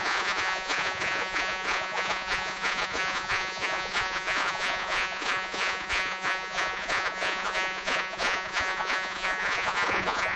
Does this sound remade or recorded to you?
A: remade